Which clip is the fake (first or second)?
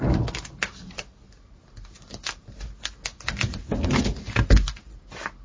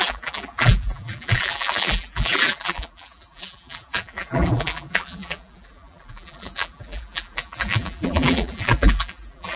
second